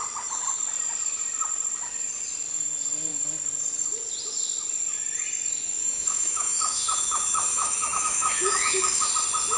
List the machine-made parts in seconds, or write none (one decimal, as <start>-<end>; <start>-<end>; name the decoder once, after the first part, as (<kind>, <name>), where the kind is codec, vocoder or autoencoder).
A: 5.8-9.1 (autoencoder, DAC-VAE)